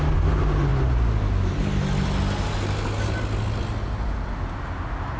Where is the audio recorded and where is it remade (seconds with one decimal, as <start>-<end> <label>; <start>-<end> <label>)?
0.0-5.2 recorded

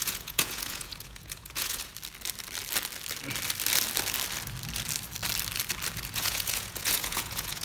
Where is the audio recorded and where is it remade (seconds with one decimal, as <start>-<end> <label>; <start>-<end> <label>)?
0.0-1.9 remade; 1.9-6.1 recorded; 6.1-7.6 remade

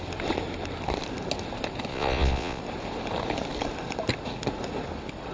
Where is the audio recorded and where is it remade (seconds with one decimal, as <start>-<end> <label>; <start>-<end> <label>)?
0.0-1.9 recorded; 1.9-2.6 remade; 2.6-5.3 recorded

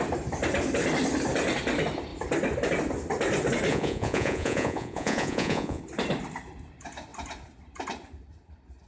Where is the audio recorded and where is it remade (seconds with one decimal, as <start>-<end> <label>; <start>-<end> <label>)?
0.0-3.7 recorded; 3.7-5.8 remade; 5.8-8.9 recorded